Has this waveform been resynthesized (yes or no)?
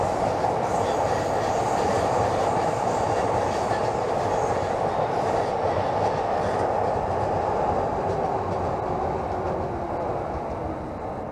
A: no